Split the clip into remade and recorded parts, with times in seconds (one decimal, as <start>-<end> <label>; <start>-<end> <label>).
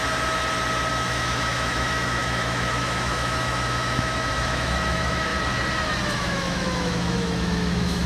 0.0-0.9 recorded; 0.9-5.3 remade; 5.3-6.1 recorded; 6.1-8.1 remade